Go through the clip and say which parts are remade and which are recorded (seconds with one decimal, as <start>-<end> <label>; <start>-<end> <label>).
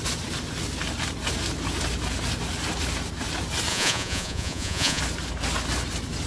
0.0-3.7 recorded; 3.7-5.0 remade; 5.0-6.3 recorded